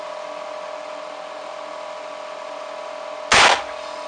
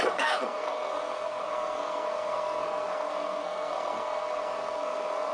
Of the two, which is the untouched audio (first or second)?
first